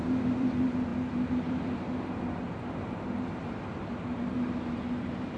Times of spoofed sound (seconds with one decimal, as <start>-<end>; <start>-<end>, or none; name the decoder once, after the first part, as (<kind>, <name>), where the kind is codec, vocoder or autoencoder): 0.0-5.4 (vocoder, BigVGAN v2)